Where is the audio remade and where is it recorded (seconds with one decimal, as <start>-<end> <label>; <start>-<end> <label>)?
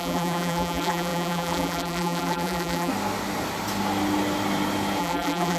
0.0-2.9 remade; 2.9-5.0 recorded; 5.0-5.6 remade